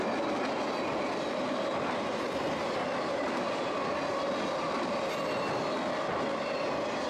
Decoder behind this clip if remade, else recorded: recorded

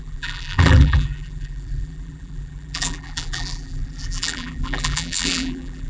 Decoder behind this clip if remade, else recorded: remade, vocoder, BigVGAN v2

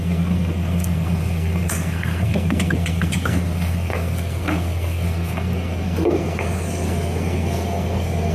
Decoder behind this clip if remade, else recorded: remade, codec, SNAC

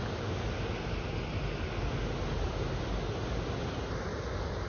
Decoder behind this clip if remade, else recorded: recorded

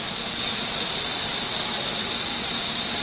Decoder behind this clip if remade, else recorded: recorded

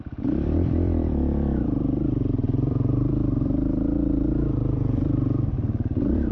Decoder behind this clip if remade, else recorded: remade, vocoder, BigVGAN v2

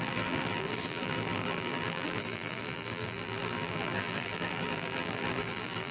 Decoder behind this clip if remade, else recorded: remade, vocoder, BigVGAN v2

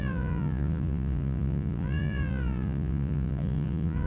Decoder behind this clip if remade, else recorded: remade, vocoder, Vocos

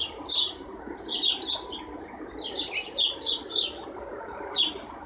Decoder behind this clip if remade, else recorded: recorded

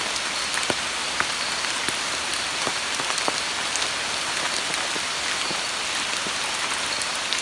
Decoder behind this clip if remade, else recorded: recorded